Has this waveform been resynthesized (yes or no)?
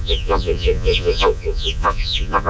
yes